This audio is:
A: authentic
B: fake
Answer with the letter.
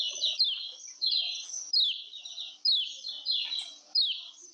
A